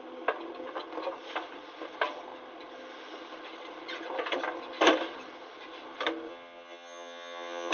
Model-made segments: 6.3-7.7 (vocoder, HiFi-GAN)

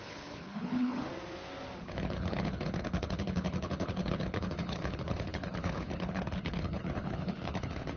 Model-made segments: 0.0-1.1 (codec, HILCodec); 1.8-8.0

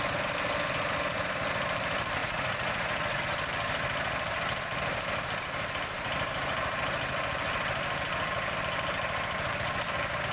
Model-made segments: 2.2-3.2 (vocoder, Vocos)

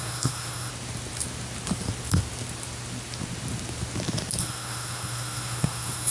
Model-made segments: 0.0-0.7 (codec, SNAC); 4.4-6.1